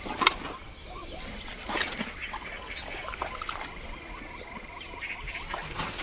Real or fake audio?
real